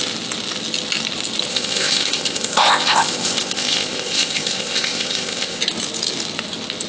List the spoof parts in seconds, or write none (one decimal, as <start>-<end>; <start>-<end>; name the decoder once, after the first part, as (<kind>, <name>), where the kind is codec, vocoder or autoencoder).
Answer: 1.5-5.6 (codec, ZipCodec)